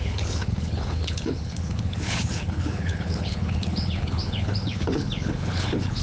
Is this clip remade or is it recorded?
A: remade